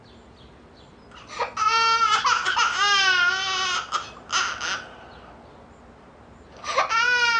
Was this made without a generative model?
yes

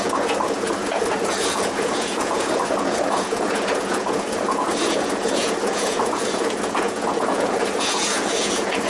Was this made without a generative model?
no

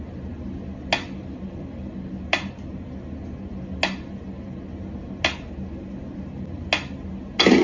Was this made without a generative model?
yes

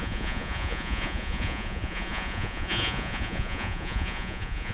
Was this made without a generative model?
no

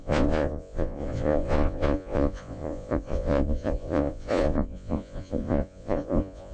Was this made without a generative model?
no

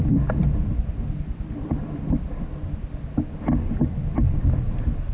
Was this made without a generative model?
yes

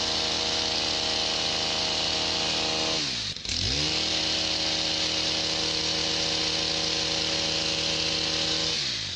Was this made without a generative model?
yes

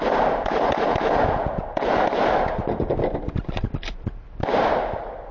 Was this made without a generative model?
yes